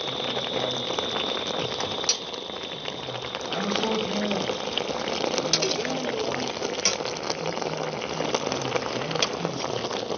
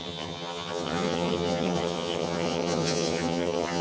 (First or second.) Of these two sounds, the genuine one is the first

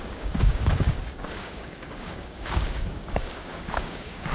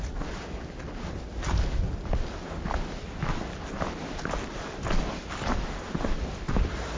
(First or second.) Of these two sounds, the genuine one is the second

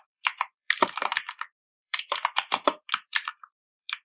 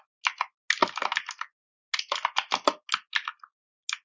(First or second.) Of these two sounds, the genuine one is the second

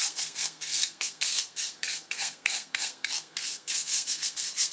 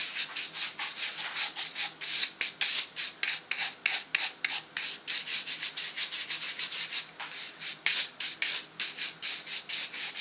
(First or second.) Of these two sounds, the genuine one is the second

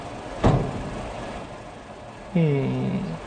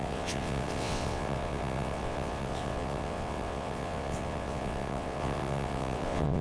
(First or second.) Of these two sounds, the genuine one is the first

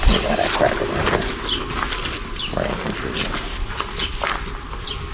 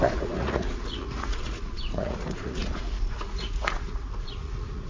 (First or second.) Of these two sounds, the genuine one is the first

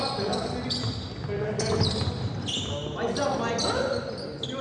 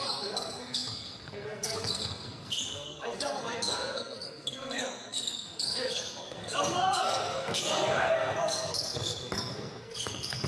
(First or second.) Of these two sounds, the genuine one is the first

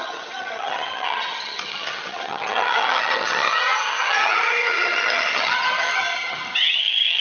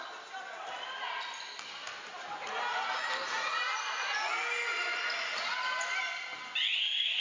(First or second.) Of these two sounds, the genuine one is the second